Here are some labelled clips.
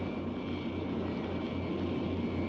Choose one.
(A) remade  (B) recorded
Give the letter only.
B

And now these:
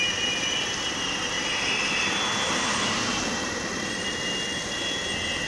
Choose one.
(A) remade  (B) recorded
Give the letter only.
B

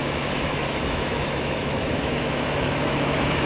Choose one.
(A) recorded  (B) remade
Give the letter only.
B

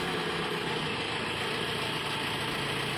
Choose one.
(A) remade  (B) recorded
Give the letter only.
B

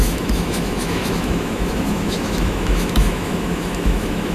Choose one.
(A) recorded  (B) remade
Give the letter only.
B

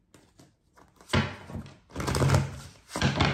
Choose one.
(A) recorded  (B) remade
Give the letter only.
A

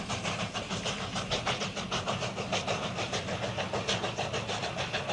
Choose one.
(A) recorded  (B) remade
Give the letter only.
A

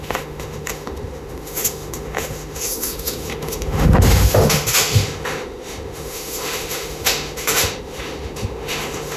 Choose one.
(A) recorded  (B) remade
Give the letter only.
B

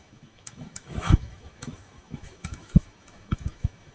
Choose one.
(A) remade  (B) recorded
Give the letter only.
A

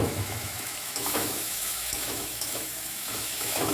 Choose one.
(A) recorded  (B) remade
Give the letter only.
B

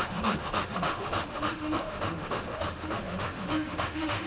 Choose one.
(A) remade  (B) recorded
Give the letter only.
A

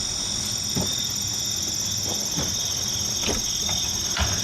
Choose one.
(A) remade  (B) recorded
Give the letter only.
B